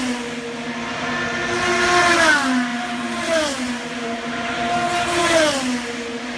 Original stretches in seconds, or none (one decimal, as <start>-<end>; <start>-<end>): 0.0-2.7; 5.2-6.4